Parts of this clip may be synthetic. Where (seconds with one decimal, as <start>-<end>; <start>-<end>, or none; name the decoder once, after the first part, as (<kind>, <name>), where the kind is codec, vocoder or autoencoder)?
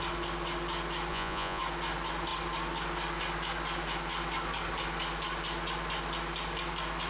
1.1-1.6 (vocoder, Vocos)